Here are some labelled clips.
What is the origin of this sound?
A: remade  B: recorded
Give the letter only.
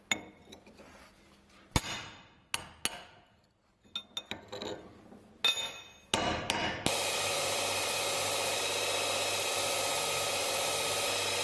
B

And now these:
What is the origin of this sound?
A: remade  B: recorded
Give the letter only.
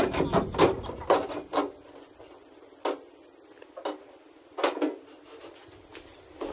B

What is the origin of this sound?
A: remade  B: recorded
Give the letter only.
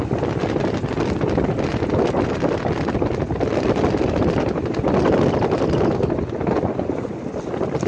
B